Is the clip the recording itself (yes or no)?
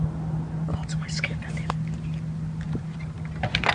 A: yes